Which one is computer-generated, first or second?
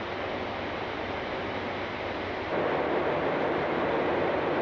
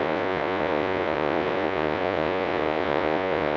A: second